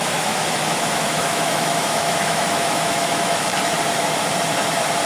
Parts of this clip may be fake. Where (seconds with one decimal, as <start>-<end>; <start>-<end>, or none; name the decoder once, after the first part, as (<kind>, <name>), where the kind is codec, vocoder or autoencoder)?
0.0-3.5 (autoencoder, DAC-VAE)